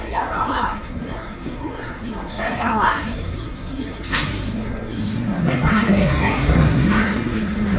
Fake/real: fake